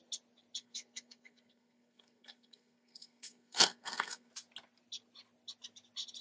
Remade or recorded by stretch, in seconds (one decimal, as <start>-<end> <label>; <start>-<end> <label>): 0.0-0.6 recorded; 0.6-4.3 remade; 4.3-6.2 recorded